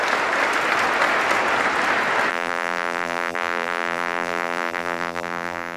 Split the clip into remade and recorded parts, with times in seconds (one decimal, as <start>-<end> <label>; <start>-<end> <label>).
0.0-2.3 recorded; 2.3-5.8 remade